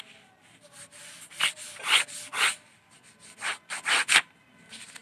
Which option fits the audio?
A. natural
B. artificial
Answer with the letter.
A